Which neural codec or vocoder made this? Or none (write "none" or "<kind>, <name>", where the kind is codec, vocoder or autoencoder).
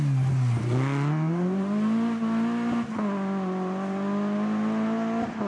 none